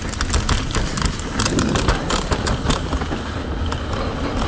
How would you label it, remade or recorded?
recorded